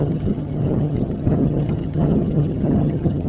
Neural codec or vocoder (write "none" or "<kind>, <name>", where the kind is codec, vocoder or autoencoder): vocoder, HiFi-GAN